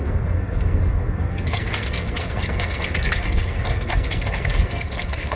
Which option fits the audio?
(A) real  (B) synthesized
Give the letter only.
B